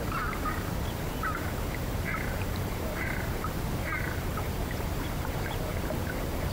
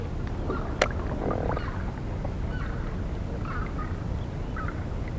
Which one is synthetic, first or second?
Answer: first